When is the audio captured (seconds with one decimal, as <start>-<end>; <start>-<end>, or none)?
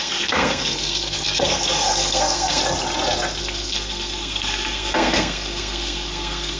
2.6-3.4